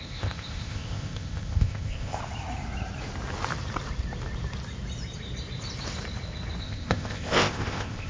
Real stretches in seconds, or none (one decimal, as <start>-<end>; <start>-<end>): 2.2-6.6